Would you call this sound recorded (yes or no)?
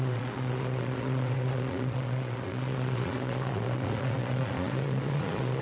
no